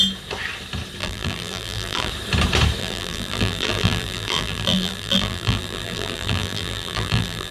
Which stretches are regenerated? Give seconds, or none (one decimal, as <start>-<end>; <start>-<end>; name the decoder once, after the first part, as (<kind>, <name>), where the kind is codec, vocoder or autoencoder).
1.0-2.1 (vocoder, BigVGAN v2); 2.8-7.5